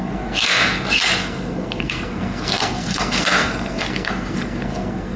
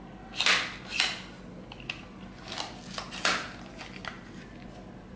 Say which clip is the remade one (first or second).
first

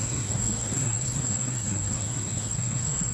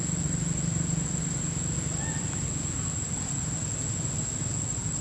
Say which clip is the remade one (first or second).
first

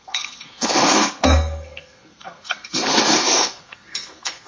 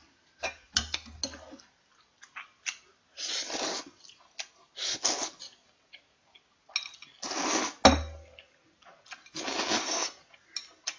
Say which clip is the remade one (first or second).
first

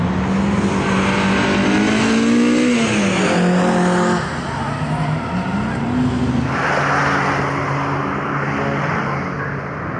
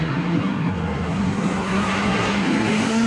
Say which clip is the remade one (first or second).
second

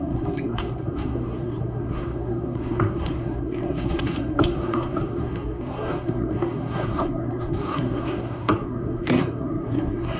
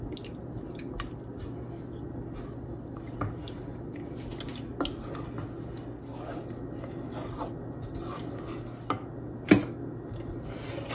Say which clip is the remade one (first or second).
first